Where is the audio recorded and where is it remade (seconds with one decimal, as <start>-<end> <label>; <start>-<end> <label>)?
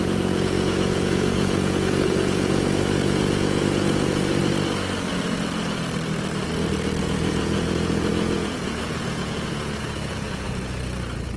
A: 0.0-4.4 remade; 4.4-7.0 recorded; 7.0-11.4 remade